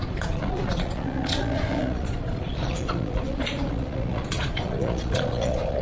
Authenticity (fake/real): fake